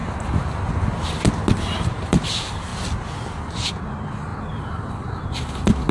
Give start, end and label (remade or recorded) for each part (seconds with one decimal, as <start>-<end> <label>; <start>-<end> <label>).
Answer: 0.0-1.8 recorded; 1.8-2.7 remade; 2.7-3.8 recorded; 3.8-5.9 remade